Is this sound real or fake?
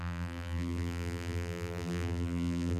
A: fake